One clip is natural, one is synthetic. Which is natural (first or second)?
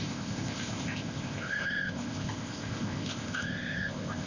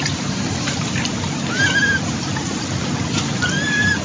second